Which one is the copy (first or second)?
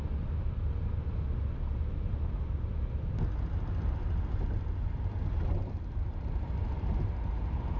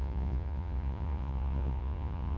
second